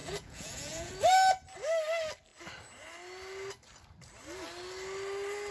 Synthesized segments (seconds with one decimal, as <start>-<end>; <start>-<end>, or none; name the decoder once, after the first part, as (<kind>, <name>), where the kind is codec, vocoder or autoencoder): 0.0-0.9 (vocoder, Vocos)